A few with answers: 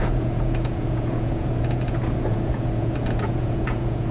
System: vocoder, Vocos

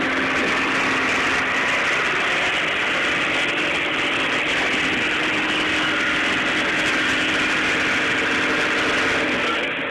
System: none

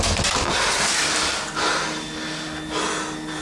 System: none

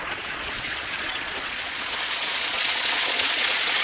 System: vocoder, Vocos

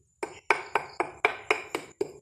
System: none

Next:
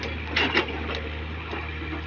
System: none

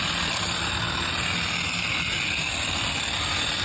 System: none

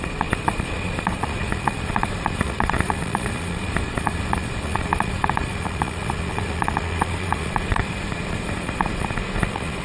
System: vocoder, Vocos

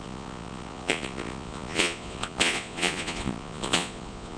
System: vocoder, Vocos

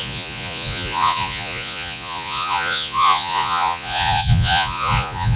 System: vocoder, Vocos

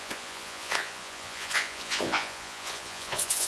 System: vocoder, Vocos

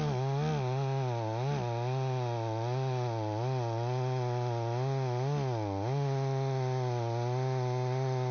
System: none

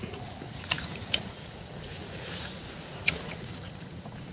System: vocoder, Vocos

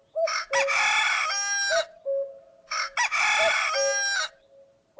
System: none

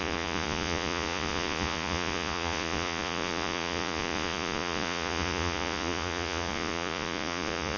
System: vocoder, Vocos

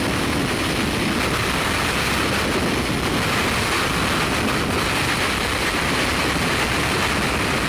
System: none